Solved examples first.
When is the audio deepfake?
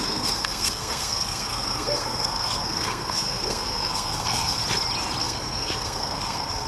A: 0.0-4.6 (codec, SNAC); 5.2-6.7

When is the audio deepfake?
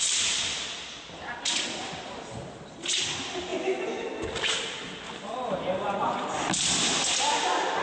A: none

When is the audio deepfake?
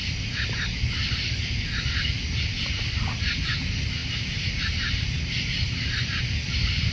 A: none